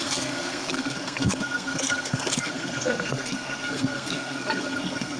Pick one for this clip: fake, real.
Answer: fake